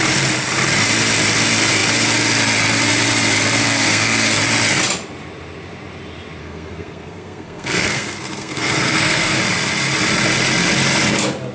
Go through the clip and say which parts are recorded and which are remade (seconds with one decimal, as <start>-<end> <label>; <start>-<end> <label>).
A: 0.0-3.6 recorded; 3.6-4.4 remade; 4.4-6.4 recorded; 6.4-9.4 remade; 9.4-11.5 recorded